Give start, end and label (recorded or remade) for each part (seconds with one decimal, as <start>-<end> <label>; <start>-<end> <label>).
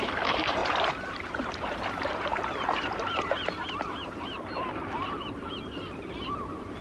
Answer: 0.0-6.8 remade